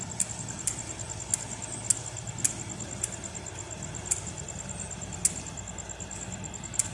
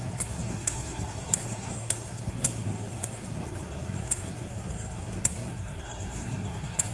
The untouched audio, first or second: first